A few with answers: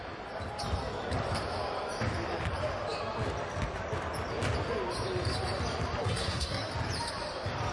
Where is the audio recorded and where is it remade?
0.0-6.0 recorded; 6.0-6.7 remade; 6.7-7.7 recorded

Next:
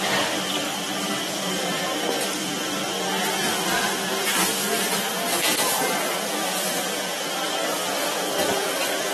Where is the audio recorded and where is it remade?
0.0-9.1 recorded